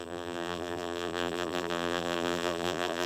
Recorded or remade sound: remade